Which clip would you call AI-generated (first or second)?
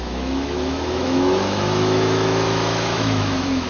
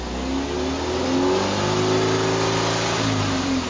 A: first